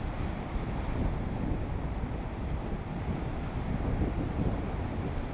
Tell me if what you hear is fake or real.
real